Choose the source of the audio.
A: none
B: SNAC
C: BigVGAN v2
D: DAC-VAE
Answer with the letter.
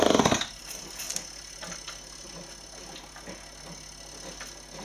A